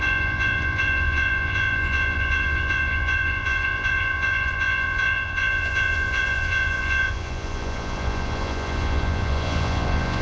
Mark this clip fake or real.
fake